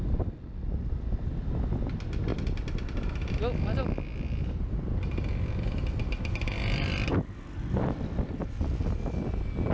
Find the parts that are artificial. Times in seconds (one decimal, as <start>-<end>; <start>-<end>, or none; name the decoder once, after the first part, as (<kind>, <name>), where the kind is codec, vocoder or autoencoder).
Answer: none